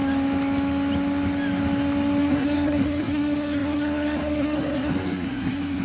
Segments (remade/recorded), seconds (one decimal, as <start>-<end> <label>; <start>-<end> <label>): 0.0-2.2 recorded; 2.2-5.8 remade